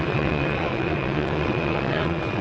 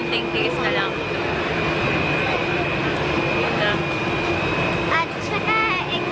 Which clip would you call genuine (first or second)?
second